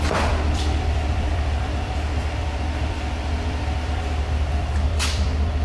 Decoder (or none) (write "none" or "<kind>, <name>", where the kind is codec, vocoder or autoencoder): vocoder, BigVGAN v2